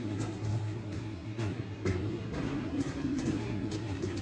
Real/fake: fake